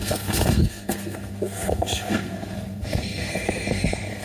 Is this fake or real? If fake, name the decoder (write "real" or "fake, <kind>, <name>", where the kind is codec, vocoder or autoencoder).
fake, codec, SNAC